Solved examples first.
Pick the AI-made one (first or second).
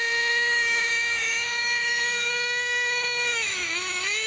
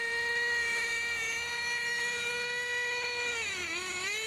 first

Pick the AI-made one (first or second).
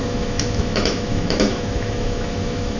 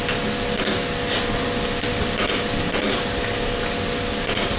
first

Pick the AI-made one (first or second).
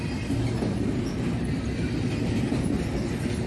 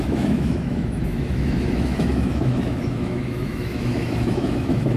second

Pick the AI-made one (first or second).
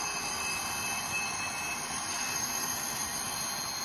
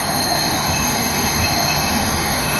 second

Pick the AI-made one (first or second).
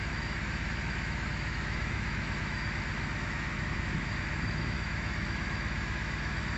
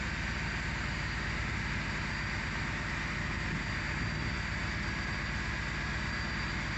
first